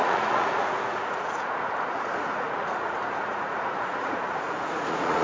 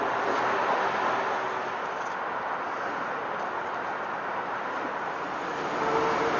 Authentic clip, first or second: second